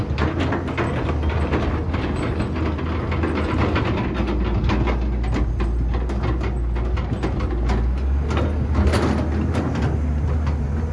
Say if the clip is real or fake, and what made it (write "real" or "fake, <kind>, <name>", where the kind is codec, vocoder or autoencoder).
real